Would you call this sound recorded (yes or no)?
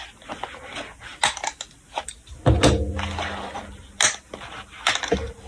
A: yes